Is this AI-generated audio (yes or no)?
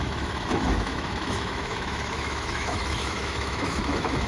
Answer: yes